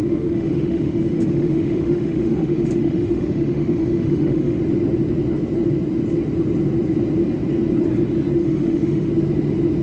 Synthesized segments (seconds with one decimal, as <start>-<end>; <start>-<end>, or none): 0.0-4.6; 8.4-9.1